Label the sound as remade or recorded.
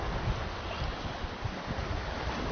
recorded